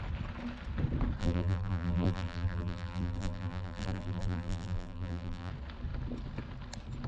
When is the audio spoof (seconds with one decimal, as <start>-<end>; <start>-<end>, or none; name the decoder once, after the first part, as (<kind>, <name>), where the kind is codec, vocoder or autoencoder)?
1.2-5.5 (vocoder, BigVGAN v2)